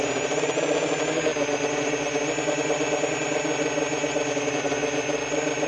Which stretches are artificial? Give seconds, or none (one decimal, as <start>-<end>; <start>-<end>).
none